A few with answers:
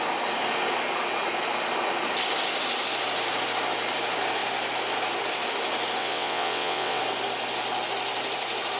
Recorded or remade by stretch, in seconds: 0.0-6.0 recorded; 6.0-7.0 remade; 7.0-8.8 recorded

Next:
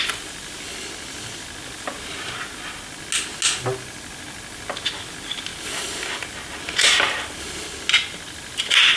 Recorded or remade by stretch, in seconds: 0.0-9.0 recorded

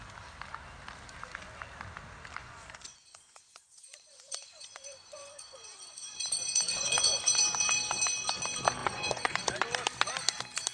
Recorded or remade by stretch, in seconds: 0.0-2.4 recorded; 2.4-7.4 remade; 7.4-8.8 recorded; 8.8-9.4 remade; 9.4-10.7 recorded

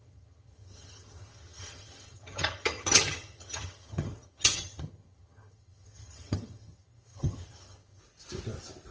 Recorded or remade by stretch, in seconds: 0.0-8.0 remade; 8.0-8.9 recorded

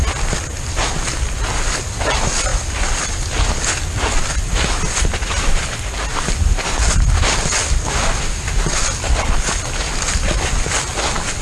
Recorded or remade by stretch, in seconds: 0.0-7.8 recorded; 7.8-8.6 remade; 8.6-11.4 recorded

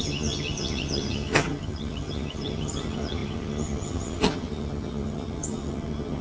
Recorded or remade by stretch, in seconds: 0.0-6.2 remade

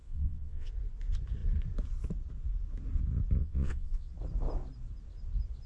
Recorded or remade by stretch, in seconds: 0.0-0.7 remade; 0.7-3.4 recorded; 3.4-4.1 remade; 4.1-5.7 recorded

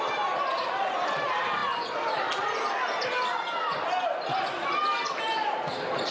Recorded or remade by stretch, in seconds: 0.0-6.1 recorded